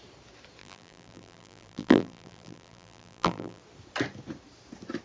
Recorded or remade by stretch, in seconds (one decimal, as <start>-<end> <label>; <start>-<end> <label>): 0.0-0.6 recorded; 0.6-3.6 remade; 3.6-5.0 recorded